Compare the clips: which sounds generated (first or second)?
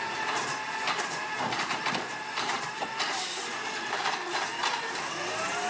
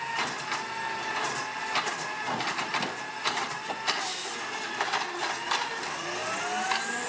first